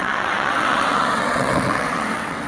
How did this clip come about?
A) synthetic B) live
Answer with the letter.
A